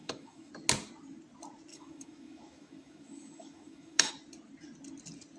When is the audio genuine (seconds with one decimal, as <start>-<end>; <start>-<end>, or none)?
0.5-1.7; 4.1-5.4